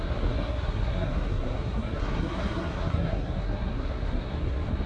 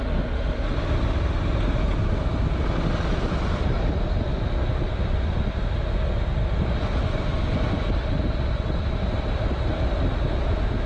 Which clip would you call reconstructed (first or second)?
first